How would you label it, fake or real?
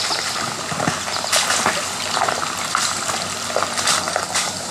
real